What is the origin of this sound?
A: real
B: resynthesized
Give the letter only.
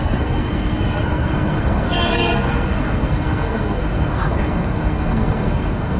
B